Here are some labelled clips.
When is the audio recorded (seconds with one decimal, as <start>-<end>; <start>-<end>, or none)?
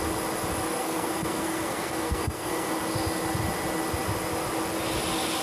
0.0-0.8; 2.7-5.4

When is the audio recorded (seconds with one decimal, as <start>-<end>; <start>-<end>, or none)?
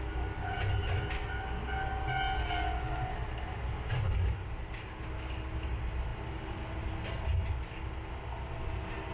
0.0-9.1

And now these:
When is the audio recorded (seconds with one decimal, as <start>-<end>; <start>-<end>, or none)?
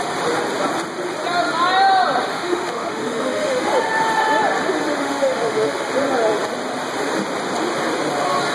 0.0-2.3; 3.7-5.0; 5.9-8.5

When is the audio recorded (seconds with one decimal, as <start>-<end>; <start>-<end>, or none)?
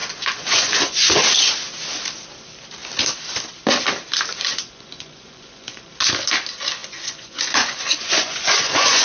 1.2-4.3; 5.9-6.8